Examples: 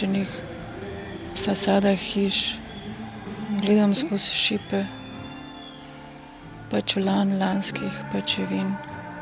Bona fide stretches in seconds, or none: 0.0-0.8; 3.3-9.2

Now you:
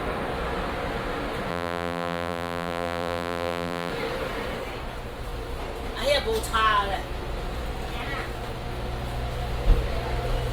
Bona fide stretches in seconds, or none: 0.0-1.5; 3.9-10.5

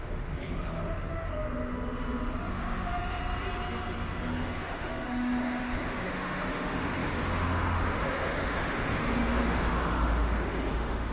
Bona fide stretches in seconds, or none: 1.3-2.5; 3.2-4.3

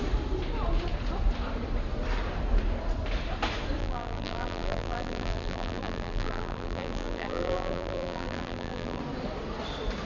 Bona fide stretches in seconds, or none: 0.0-3.8; 9.0-10.1

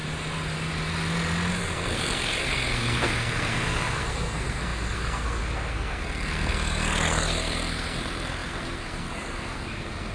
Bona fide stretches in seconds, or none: 0.0-1.5

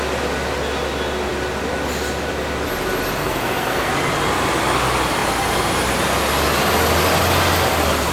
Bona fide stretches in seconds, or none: 0.0-3.2; 3.9-8.1